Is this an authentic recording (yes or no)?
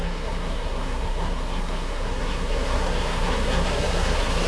no